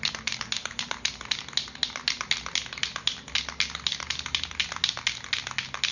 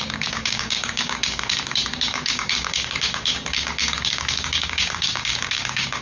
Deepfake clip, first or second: second